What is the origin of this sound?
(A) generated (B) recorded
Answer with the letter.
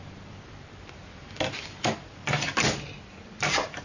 B